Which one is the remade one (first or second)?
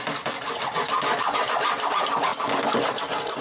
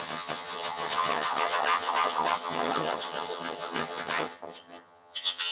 second